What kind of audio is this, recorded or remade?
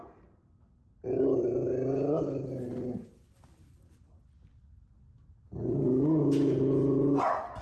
recorded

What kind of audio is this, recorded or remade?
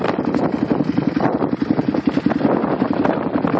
recorded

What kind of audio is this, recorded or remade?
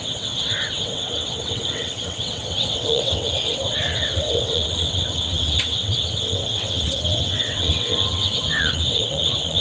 remade